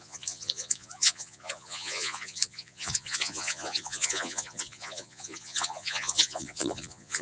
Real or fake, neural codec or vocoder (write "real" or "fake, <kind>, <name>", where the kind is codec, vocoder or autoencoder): fake, vocoder, Vocos